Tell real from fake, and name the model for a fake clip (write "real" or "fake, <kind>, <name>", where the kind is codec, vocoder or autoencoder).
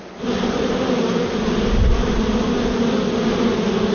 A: real